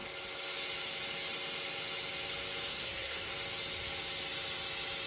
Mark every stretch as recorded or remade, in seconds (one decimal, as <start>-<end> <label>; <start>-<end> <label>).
0.0-2.7 recorded; 2.7-3.3 remade; 3.3-5.1 recorded